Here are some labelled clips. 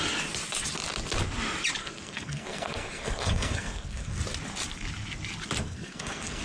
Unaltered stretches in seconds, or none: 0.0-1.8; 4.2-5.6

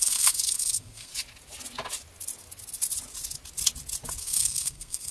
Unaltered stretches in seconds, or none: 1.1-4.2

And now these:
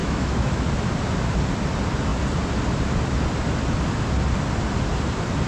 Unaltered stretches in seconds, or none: 0.6-5.5

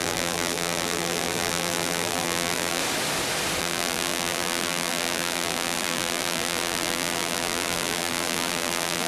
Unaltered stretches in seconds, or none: 2.8-3.6